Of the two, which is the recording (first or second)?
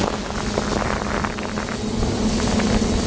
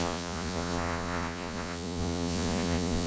first